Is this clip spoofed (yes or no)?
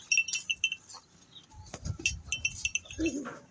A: no